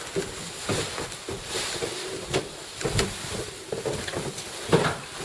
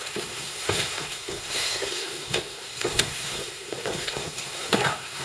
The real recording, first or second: first